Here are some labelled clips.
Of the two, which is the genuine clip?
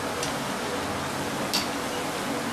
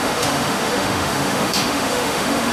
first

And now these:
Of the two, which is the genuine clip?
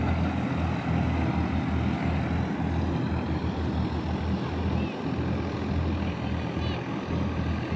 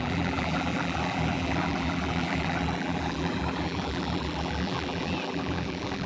first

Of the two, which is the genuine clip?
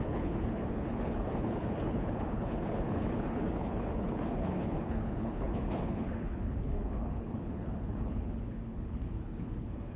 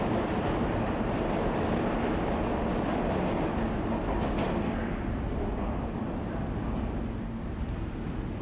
second